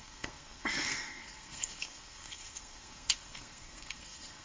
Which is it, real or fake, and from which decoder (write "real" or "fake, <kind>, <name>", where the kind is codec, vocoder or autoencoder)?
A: fake, codec, SNAC